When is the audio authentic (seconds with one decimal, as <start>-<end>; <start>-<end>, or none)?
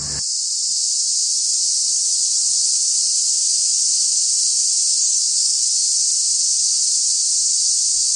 0.0-4.9; 5.6-8.2